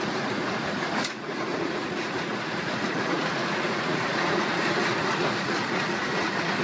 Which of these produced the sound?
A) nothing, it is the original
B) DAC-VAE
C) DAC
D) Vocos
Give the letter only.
D